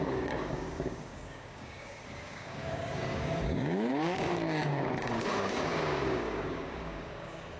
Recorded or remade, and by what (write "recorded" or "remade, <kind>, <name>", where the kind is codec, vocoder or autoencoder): remade, codec, DAC